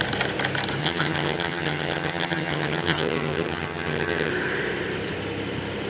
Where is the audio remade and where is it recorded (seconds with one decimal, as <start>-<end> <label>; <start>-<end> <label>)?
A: 0.0-0.8 recorded; 0.8-4.3 remade; 4.3-5.9 recorded